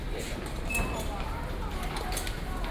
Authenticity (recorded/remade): recorded